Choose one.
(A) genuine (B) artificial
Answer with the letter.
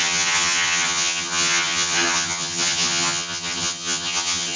B